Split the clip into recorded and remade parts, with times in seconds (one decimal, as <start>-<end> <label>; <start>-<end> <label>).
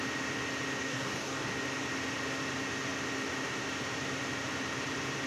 0.0-0.8 recorded; 0.8-1.5 remade; 1.5-5.3 recorded